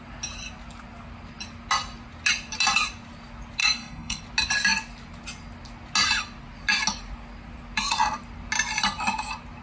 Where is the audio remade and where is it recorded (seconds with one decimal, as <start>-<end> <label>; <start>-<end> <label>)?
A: 0.0-3.6 recorded; 3.6-4.2 remade; 4.2-9.6 recorded